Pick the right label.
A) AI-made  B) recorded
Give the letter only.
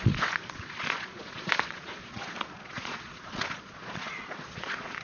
A